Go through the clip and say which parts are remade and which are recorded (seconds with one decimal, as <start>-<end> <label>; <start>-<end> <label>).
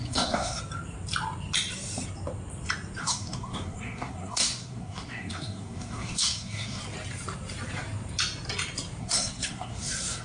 0.0-0.6 remade; 0.6-3.0 recorded; 3.0-6.8 remade; 6.8-9.0 recorded; 9.0-10.2 remade